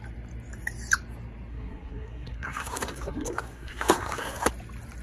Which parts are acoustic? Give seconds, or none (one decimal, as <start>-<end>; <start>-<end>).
0.0-1.5; 4.5-5.0